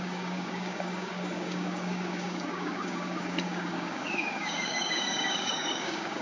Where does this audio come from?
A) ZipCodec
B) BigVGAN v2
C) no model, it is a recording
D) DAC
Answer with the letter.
D